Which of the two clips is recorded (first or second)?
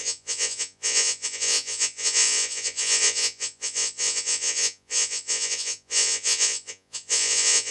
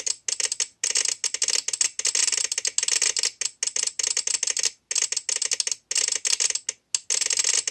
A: second